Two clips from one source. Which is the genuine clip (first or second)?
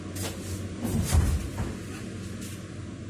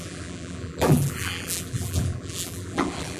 first